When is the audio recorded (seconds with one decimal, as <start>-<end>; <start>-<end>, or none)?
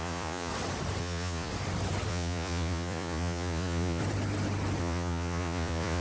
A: 0.5-1.0; 1.5-2.1; 4.0-4.8